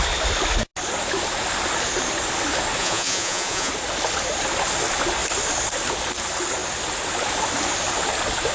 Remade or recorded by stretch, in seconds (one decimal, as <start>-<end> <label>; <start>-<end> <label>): 0.0-2.8 recorded; 2.8-3.7 remade; 3.7-8.5 recorded